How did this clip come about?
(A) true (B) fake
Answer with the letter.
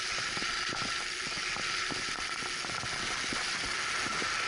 A